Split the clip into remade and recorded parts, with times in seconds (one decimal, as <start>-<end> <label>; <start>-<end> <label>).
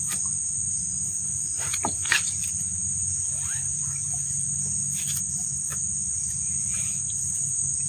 0.0-7.9 recorded